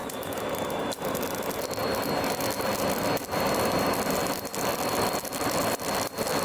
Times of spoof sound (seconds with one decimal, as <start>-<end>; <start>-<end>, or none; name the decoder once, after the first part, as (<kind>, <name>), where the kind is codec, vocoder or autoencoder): 0.0-0.6 (vocoder, BigVGAN v2)